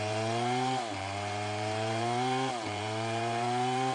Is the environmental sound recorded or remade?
remade